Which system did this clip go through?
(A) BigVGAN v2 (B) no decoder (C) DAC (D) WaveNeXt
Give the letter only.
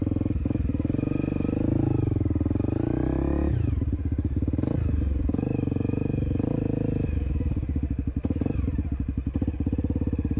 B